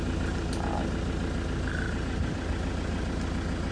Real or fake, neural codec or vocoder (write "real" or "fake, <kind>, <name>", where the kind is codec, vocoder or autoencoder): real